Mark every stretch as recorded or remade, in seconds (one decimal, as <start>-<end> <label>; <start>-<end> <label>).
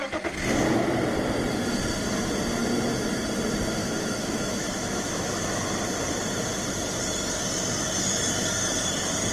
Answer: 0.0-3.8 recorded; 3.8-5.6 remade; 5.6-9.3 recorded